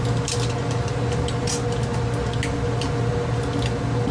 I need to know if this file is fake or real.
real